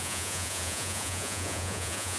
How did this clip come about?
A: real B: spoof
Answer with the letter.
B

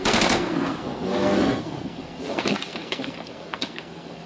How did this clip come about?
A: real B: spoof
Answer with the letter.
B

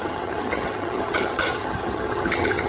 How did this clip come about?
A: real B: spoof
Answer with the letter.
B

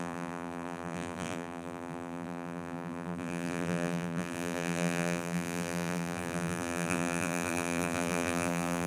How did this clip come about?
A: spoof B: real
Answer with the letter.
A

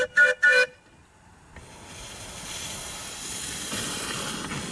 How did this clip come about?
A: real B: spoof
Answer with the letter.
A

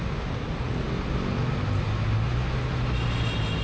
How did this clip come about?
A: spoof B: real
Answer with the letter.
B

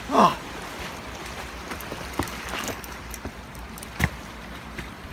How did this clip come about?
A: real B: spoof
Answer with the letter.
B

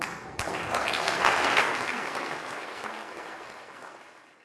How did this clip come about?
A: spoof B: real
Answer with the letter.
A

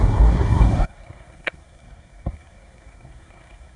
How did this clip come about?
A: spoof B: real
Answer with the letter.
A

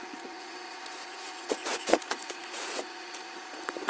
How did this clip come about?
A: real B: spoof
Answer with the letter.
B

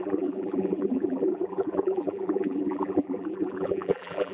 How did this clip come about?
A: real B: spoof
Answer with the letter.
B